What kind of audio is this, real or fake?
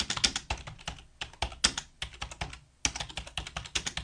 real